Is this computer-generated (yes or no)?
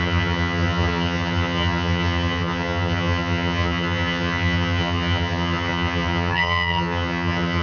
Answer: yes